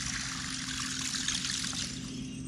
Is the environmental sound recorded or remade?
recorded